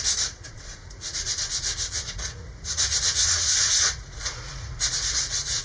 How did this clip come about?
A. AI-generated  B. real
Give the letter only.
A